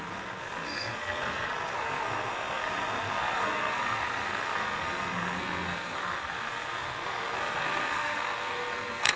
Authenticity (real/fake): fake